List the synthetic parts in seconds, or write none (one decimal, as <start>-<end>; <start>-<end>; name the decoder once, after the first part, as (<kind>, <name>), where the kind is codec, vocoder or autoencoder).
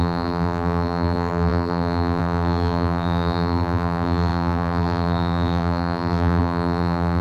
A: 0.0-7.2 (vocoder, BigVGAN v2)